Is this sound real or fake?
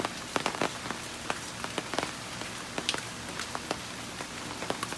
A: real